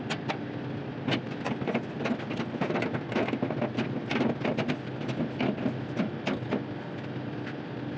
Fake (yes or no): no